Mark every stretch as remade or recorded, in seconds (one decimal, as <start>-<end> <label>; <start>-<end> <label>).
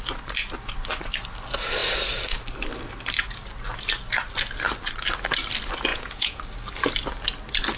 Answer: 0.0-5.9 recorded; 5.9-6.4 remade; 6.4-7.8 recorded